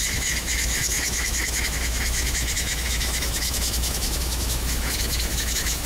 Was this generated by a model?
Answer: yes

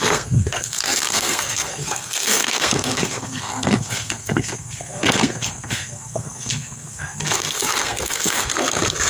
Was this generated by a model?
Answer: yes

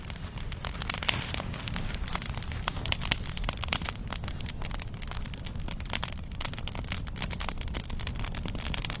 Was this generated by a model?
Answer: no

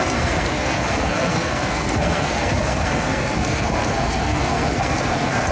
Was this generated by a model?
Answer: yes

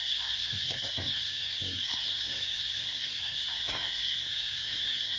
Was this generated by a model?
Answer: yes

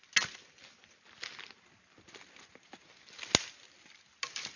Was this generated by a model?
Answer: no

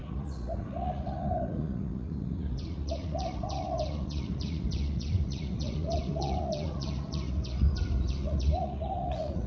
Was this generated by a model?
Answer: yes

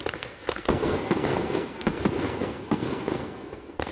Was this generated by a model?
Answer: yes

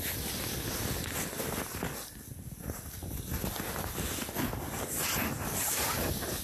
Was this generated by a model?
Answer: no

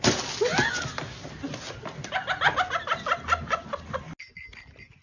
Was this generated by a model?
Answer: no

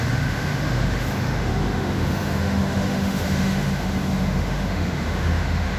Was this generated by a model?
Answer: yes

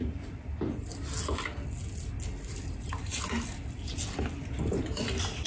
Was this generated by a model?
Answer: no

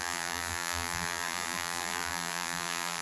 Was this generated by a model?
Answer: yes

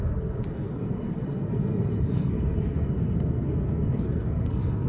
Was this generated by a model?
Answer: yes